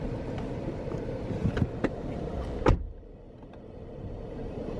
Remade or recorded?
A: remade